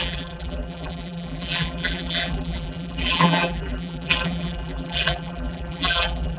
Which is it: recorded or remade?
remade